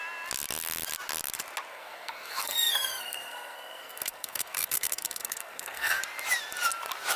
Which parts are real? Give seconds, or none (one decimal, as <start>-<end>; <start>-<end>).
0.0-1.7; 6.0-7.2